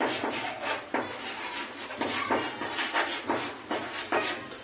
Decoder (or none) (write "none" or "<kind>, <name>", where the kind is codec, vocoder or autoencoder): vocoder, BigVGAN v2